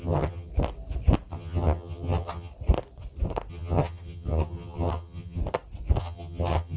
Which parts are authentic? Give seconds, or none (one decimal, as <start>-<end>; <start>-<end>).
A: 0.5-1.3; 2.5-3.5; 5.4-6.0